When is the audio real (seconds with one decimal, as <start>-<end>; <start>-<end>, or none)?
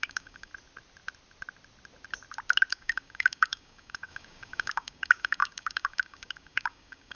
0.5-2.7